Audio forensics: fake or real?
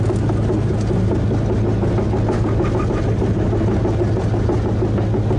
real